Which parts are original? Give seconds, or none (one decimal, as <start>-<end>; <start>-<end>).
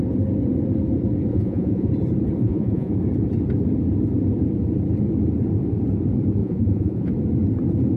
0.0-1.3; 1.9-2.4; 2.9-6.4; 7.1-8.0